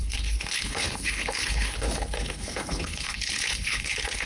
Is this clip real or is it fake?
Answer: fake